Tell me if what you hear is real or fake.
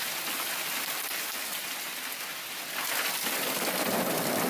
real